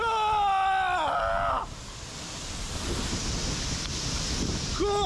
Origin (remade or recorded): recorded